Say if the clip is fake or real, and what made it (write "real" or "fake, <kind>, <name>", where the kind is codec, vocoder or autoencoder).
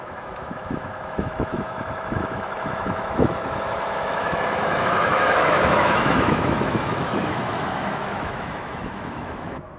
fake, autoencoder, DAC-VAE